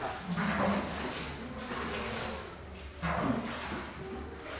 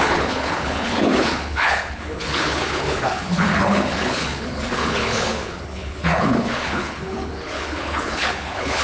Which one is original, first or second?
first